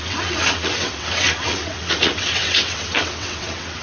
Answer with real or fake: fake